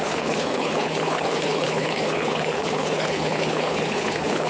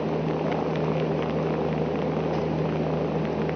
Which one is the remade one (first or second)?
first